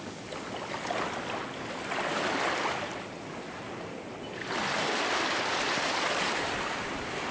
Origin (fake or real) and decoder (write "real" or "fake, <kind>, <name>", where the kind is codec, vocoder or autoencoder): real